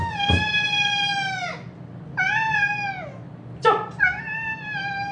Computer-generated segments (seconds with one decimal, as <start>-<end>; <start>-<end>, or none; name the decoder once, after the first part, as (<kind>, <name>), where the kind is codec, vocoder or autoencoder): none

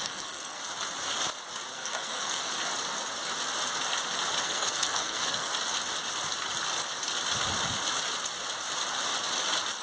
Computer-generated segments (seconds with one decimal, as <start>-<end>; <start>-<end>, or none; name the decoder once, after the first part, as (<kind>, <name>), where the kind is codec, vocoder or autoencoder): 0.0-0.6 (codec, SNAC); 1.7-2.5; 4.4-5.5

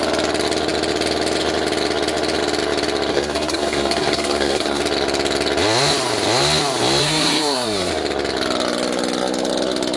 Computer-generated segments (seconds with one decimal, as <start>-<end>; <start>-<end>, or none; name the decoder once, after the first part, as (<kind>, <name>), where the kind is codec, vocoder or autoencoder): 3.1-4.8 (codec, SNAC); 7.0-7.9

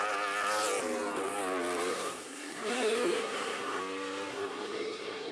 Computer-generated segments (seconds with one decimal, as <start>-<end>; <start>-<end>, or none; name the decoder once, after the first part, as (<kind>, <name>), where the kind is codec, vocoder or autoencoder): 1.9-3.8 (codec, SNAC); 4.3-5.3